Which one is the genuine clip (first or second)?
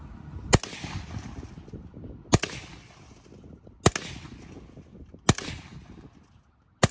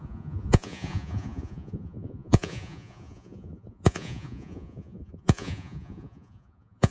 first